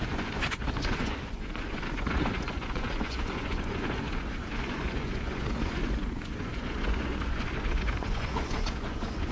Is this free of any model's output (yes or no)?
no